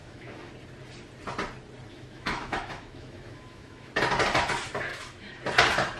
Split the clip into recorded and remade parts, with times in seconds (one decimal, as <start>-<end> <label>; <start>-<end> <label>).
0.0-0.5 remade; 0.5-1.9 recorded; 1.9-3.9 remade; 3.9-4.9 recorded; 4.9-5.4 remade; 5.4-6.0 recorded